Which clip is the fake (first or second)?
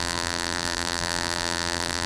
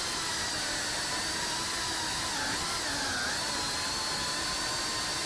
first